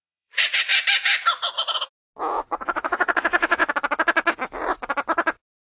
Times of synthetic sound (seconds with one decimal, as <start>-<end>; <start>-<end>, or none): 0.0-0.7; 2.4-3.6